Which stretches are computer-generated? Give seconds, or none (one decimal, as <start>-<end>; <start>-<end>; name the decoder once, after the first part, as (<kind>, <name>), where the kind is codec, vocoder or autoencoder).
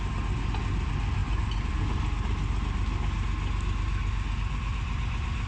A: 1.2-1.7 (vocoder, BigVGAN v2)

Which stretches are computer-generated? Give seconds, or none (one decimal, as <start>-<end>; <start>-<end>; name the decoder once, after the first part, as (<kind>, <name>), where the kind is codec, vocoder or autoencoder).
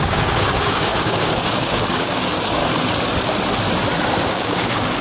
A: 0.0-2.6 (codec, DAC); 4.2-5.0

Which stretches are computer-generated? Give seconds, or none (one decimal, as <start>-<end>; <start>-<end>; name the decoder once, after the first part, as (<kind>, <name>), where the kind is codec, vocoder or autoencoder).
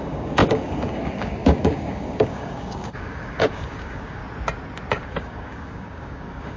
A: 0.0-4.2 (codec, DAC); 4.9-6.6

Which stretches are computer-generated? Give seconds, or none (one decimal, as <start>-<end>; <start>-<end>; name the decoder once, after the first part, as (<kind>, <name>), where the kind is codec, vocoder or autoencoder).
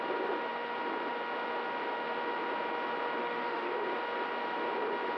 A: 3.2-3.7 (autoencoder, DAC-VAE)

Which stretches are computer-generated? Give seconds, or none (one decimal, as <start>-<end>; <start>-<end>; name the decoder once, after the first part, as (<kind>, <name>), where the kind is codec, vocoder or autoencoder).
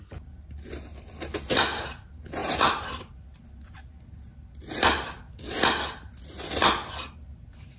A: none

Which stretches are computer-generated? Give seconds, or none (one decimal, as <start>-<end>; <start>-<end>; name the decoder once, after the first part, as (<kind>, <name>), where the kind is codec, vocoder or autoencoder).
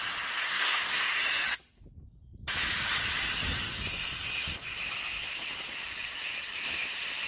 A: 0.4-1.2 (codec, SNAC)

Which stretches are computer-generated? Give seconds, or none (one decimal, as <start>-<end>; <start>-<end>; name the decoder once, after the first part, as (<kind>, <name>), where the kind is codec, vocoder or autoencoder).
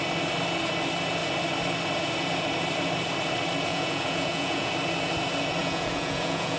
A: 3.7-4.7 (vocoder, Vocos); 5.6-6.6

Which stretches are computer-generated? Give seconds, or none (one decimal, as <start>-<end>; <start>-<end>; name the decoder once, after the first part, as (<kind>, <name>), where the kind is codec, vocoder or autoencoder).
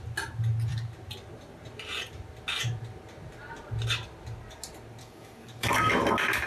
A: 5.0-5.9 (codec, DAC)